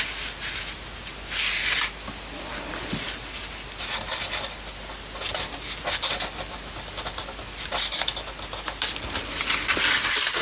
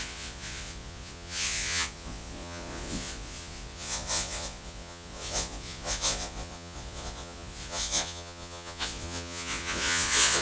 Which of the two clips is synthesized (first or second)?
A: second